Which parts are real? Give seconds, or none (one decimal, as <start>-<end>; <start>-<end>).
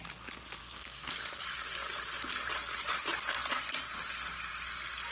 0.0-0.6; 1.1-5.1